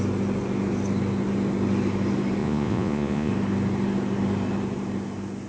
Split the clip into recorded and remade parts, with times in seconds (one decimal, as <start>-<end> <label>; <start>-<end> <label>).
0.0-2.4 recorded; 2.4-3.3 remade; 3.3-5.5 recorded